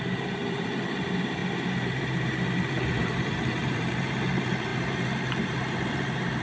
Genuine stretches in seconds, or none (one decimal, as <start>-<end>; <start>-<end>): none